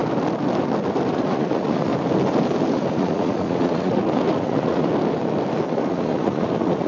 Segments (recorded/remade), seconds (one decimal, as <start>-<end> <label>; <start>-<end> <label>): 0.0-1.1 recorded; 1.1-1.9 remade; 1.9-2.7 recorded; 2.7-4.9 remade; 4.9-5.7 recorded; 5.7-6.9 remade